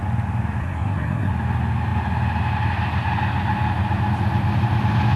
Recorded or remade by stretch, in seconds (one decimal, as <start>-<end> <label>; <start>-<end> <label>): 0.0-0.6 recorded; 0.6-1.3 remade; 1.3-5.2 recorded